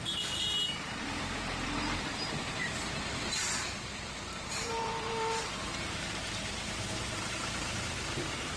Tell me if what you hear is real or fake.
fake